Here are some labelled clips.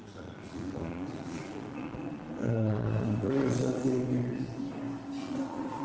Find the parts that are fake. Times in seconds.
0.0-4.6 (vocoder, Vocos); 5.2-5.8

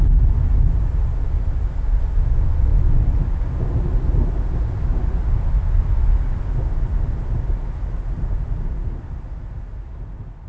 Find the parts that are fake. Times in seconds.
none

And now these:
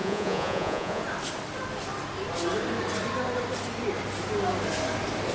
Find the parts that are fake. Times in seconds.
0.0-1.0 (vocoder, Vocos)

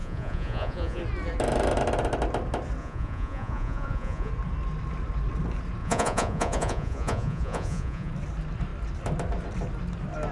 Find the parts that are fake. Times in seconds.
0.0-1.0 (vocoder, Vocos); 2.8-4.3; 5.8-8.1